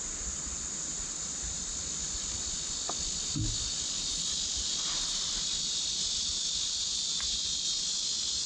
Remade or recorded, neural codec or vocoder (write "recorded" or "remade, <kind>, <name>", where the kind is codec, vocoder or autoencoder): recorded